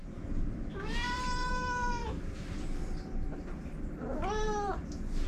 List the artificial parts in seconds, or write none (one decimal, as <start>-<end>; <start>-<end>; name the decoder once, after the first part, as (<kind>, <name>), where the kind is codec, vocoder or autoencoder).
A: 1.5-2.0 (autoencoder, DAC-VAE)